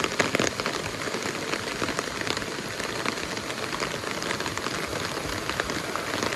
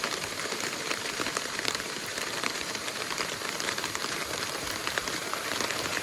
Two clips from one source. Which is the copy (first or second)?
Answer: second